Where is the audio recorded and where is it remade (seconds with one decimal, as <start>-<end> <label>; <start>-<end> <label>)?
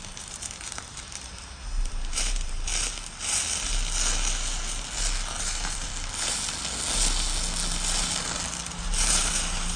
0.0-2.7 remade; 2.7-5.4 recorded; 5.4-5.9 remade; 5.9-8.7 recorded; 8.7-9.8 remade